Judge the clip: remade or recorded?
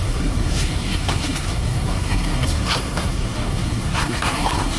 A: remade